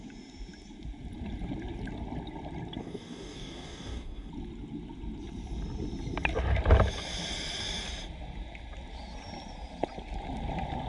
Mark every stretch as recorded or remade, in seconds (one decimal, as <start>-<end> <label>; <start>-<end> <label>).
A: 0.0-2.8 recorded; 2.8-4.3 remade; 4.3-10.9 recorded